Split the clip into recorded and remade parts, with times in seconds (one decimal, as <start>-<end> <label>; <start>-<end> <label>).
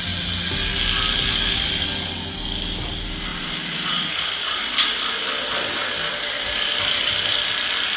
0.0-8.0 recorded